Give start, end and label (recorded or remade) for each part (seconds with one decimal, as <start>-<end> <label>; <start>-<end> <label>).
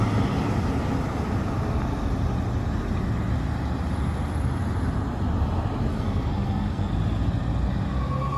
0.0-5.9 recorded; 5.9-6.9 remade; 6.9-8.4 recorded